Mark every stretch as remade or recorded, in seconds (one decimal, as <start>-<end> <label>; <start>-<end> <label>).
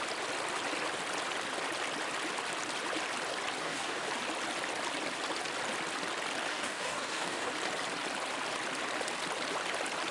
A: 0.0-3.6 recorded; 3.6-4.1 remade; 4.1-6.5 recorded; 6.5-7.5 remade; 7.5-10.1 recorded